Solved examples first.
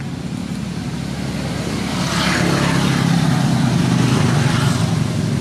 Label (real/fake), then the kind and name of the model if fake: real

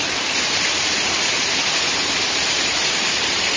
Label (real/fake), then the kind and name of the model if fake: fake, vocoder, BigVGAN v2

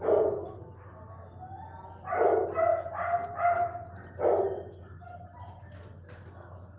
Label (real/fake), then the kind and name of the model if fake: real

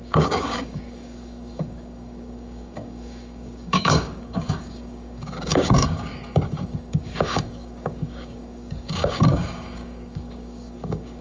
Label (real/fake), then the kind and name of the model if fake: fake, codec, DAC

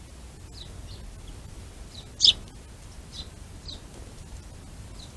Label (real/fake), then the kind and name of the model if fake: real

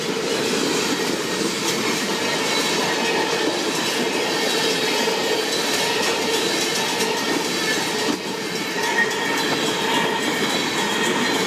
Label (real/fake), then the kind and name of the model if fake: real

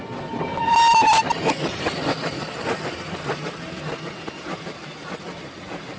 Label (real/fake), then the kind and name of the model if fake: real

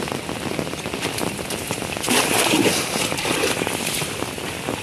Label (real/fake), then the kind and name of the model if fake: real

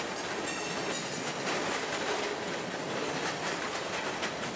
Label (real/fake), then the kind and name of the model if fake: real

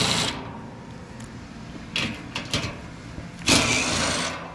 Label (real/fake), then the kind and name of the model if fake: real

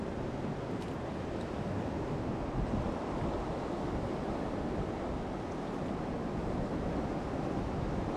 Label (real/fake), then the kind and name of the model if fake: real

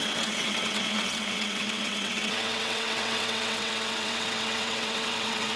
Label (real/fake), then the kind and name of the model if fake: fake, vocoder, WaveNeXt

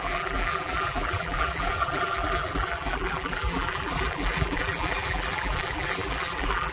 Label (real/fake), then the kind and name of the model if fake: fake, vocoder, BigVGAN v2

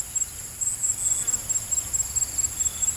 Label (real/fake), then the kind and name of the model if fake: real